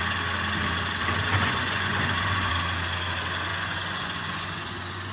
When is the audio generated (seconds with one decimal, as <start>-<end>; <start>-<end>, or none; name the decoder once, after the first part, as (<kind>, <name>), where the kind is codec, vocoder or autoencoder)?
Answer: 1.3-2.5 (vocoder, Vocos); 3.5-5.1